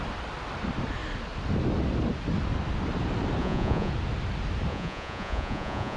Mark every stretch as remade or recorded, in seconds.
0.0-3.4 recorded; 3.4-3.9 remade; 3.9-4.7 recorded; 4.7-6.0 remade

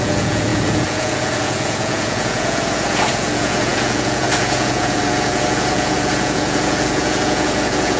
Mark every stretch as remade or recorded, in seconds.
0.0-8.0 remade

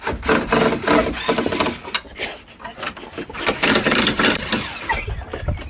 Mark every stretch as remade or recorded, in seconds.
0.0-5.7 recorded

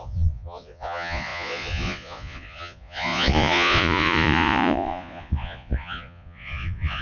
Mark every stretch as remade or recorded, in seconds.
0.0-7.0 remade

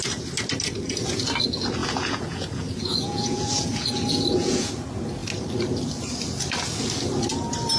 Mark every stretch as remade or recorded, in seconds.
0.0-1.8 recorded; 1.8-4.7 remade; 4.7-7.8 recorded